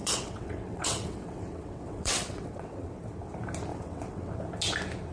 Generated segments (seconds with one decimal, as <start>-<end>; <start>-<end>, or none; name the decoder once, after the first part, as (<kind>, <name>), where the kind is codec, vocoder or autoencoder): 0.0-2.9 (vocoder, WaveNeXt); 3.7-4.3